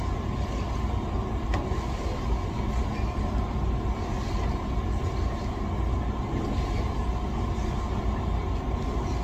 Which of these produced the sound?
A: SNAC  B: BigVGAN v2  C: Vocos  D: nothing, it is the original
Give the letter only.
D